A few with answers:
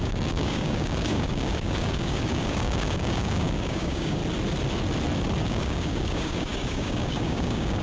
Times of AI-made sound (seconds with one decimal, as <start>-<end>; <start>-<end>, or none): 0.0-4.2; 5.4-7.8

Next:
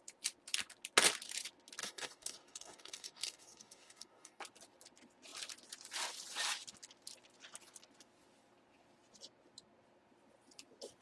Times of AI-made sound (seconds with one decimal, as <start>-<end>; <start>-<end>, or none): 1.8-4.4

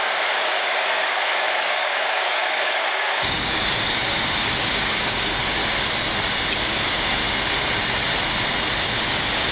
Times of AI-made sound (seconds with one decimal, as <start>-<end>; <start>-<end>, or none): 0.0-5.6; 6.6-7.2; 9.1-9.5

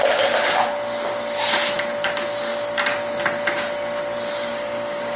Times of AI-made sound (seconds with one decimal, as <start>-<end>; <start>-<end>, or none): 4.5-5.2

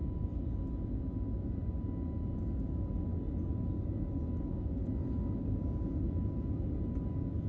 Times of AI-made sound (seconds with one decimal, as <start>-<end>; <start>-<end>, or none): none